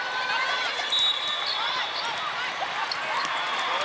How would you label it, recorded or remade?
recorded